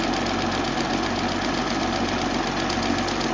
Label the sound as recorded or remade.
recorded